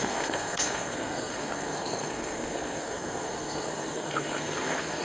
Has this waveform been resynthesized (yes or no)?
yes